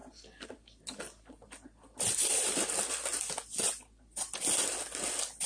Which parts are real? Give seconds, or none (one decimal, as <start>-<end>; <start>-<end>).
0.0-5.5